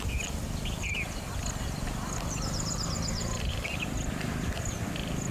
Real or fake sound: fake